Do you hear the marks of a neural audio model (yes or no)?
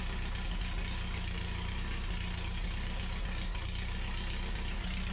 no